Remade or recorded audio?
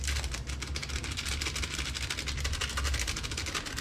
recorded